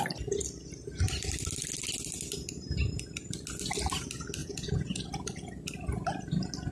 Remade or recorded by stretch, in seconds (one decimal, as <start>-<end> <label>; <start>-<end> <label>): 0.0-4.4 recorded; 4.4-5.1 remade; 5.1-6.7 recorded